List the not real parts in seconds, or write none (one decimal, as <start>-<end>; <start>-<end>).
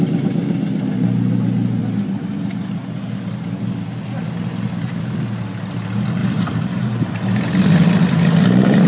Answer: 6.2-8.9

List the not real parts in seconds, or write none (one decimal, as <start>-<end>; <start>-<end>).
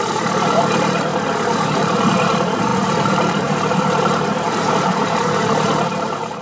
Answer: 0.0-1.1; 1.7-6.4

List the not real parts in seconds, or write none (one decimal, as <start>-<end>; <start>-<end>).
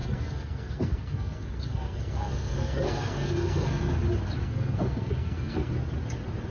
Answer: 0.0-3.9; 4.4-5.7